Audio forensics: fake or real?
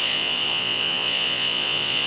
fake